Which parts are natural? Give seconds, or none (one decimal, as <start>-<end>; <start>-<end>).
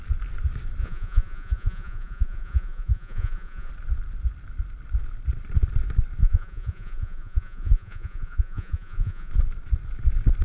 0.0-0.8; 3.7-6.2; 9.3-10.4